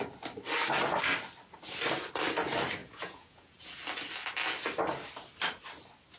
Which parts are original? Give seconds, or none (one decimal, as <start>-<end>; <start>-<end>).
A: 0.0-2.8; 3.7-6.2